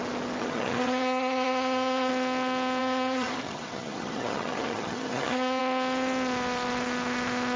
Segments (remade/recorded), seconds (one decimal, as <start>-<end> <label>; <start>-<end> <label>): 0.0-0.4 recorded; 0.4-2.1 remade; 2.1-2.8 recorded; 2.8-5.6 remade; 5.6-7.6 recorded